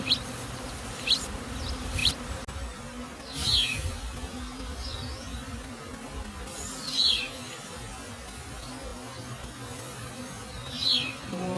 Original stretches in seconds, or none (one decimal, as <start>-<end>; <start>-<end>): 0.0-11.6